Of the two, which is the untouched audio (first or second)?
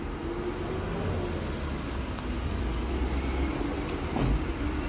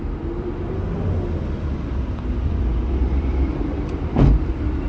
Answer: first